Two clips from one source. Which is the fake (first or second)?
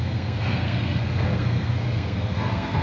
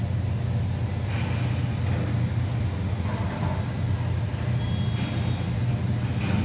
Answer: first